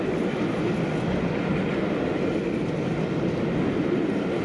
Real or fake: real